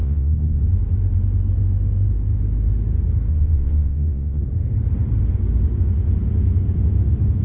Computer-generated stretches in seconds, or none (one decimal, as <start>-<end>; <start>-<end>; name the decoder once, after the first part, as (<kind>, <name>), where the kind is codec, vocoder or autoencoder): 0.0-0.6 (vocoder, Vocos); 3.3-4.4